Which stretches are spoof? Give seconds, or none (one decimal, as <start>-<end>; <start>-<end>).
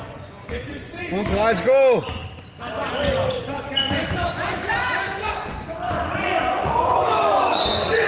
0.0-1.3; 3.3-8.1